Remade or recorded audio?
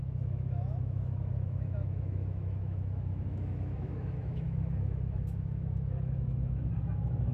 remade